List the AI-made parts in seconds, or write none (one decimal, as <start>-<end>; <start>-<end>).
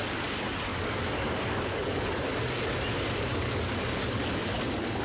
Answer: 0.7-2.3; 3.3-4.2